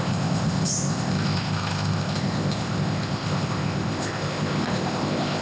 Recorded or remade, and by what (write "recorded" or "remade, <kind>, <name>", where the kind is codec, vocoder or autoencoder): remade, codec, ZipCodec